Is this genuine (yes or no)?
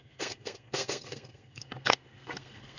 no